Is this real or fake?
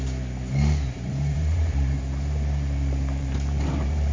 fake